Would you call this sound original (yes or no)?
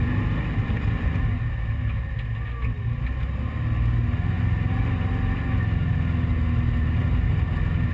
yes